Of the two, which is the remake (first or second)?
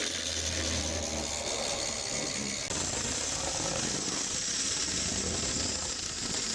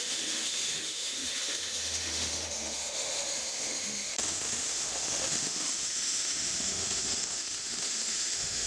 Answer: second